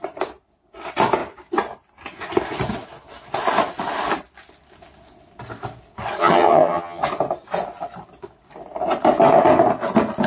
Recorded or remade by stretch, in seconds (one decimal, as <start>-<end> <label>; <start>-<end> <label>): 0.0-6.2 recorded; 6.2-7.0 remade; 7.0-10.3 recorded